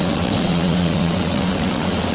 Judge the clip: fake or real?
fake